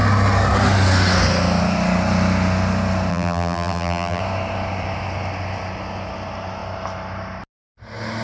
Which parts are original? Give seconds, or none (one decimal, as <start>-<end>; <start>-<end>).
0.0-3.1; 4.2-8.2